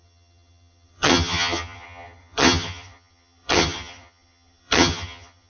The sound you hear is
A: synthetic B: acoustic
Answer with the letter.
A